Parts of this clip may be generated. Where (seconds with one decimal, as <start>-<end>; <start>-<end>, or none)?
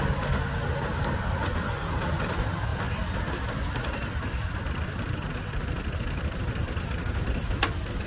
2.7-5.3